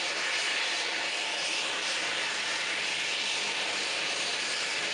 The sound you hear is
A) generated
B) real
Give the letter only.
B